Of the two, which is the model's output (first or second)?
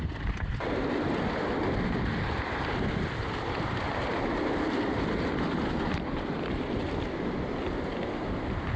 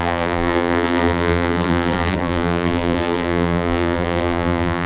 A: second